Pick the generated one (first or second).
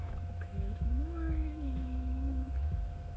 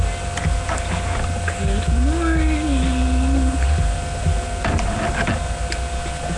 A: first